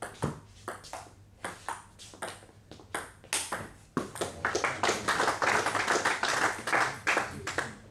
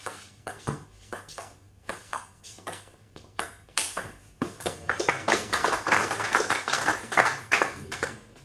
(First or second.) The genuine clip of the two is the first